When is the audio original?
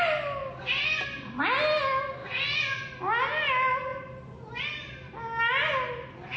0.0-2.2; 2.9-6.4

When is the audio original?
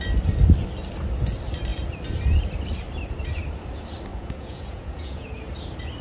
0.0-4.1; 5.4-6.0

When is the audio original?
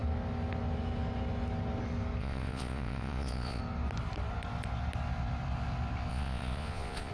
0.0-2.2; 3.6-6.1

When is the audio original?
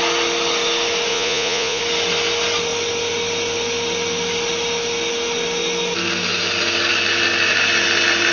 0.0-1.1; 1.8-8.3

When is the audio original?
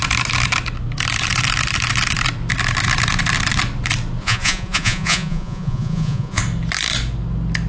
0.0-4.2; 6.4-7.7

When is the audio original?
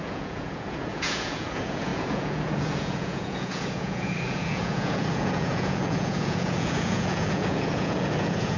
none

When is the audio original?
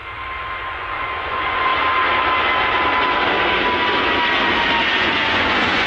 0.0-0.6; 1.7-4.8